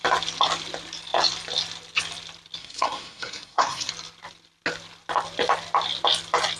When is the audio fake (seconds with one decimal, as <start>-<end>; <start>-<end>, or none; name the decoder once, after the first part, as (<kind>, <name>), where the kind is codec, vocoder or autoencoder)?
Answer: 2.6-3.9 (codec, SNAC)